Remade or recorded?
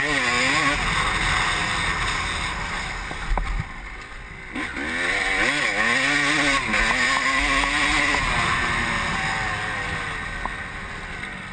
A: recorded